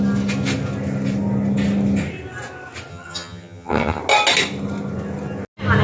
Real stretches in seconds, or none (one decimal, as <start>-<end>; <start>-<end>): 0.0-2.9; 4.0-5.8

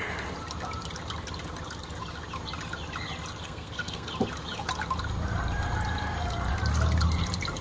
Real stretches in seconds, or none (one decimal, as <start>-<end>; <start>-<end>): 0.0-3.4; 4.1-7.6

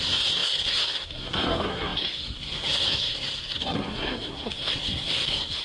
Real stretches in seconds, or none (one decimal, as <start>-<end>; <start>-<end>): none

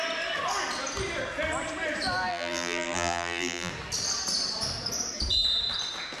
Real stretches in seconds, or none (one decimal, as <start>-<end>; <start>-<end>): 0.0-2.3; 3.7-6.2

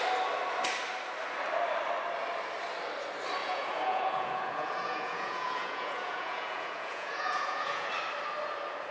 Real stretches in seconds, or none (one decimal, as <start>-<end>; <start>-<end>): 0.0-3.4; 7.9-8.9